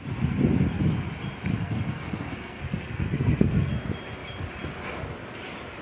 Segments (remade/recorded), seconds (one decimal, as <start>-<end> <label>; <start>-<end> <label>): 0.0-1.5 recorded; 1.5-3.7 remade; 3.7-5.8 recorded

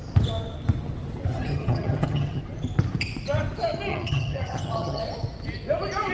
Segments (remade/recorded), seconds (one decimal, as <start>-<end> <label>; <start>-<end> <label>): 0.0-1.3 recorded; 1.3-2.4 remade; 2.4-3.9 recorded; 3.9-5.0 remade; 5.0-6.1 recorded

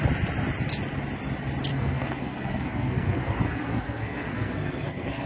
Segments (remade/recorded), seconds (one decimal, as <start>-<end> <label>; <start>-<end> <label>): 0.0-1.7 recorded; 1.7-5.3 remade

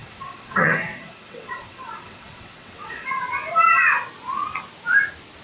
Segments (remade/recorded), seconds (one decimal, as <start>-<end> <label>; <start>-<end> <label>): 0.0-3.2 remade; 3.2-5.4 recorded

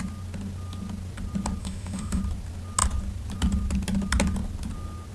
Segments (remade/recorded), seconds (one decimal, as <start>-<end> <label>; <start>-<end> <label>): 0.0-1.6 recorded; 1.6-2.2 remade; 2.2-5.1 recorded

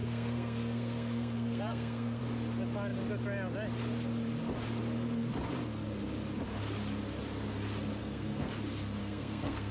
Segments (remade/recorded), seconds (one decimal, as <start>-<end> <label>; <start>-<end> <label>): 0.0-2.2 remade; 2.2-8.0 recorded; 8.0-8.5 remade; 8.5-9.0 recorded; 9.0-9.7 remade

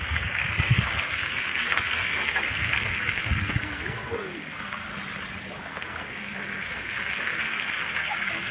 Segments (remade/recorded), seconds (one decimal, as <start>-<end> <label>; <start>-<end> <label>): 0.0-4.9 remade; 4.9-5.6 recorded; 5.6-8.5 remade

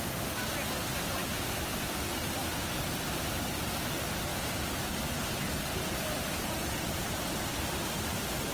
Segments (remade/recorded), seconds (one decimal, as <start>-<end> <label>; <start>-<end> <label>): 0.0-1.2 recorded; 1.2-1.8 remade; 1.8-8.5 recorded